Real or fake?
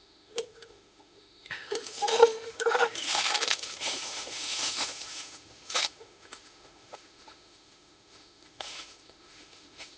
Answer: fake